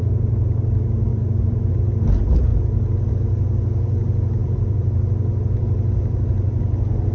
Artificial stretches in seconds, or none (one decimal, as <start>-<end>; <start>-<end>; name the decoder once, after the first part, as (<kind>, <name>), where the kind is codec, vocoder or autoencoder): 1.1-1.7 (vocoder, BigVGAN v2); 4.4-5.0